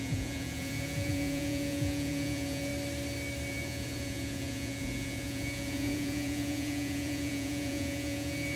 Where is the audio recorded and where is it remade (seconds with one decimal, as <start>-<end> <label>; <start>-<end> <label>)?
0.0-2.7 remade; 2.7-3.5 recorded; 3.5-8.6 remade